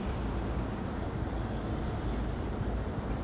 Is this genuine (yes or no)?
yes